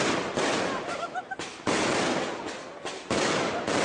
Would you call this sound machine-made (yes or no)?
no